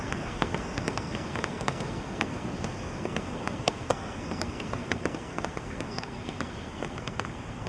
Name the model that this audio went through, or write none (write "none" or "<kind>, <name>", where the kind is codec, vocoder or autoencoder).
codec, SNAC